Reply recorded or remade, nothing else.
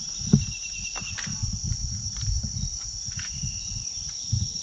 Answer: remade